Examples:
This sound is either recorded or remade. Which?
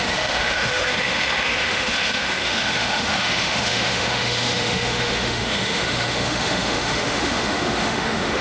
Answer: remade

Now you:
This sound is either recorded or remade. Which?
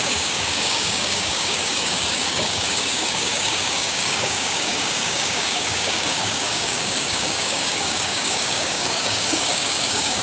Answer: remade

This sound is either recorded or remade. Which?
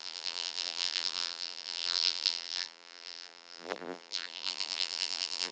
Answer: remade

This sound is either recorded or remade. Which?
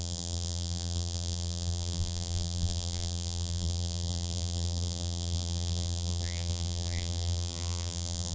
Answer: remade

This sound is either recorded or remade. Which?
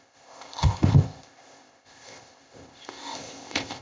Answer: remade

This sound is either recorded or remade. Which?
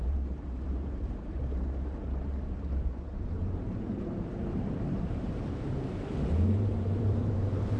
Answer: remade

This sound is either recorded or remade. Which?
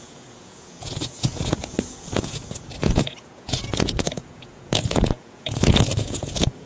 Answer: remade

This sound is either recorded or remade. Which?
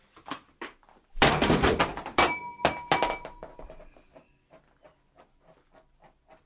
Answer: recorded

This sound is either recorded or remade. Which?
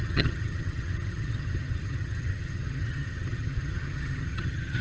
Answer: remade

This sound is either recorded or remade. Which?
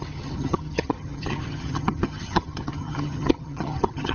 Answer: remade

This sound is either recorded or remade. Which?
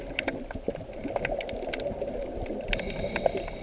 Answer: recorded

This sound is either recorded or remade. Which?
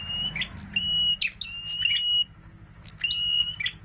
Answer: recorded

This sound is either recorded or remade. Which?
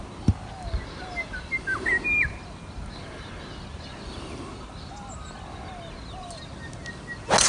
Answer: recorded